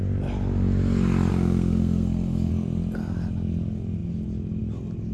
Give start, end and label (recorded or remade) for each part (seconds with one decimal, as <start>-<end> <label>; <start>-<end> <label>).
0.0-1.3 recorded; 1.3-2.5 remade; 2.5-5.1 recorded